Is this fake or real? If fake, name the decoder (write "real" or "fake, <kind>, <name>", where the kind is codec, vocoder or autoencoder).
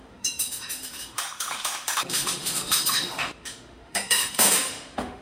fake, autoencoder, DAC-VAE